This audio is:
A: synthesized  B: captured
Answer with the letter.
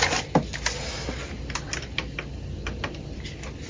B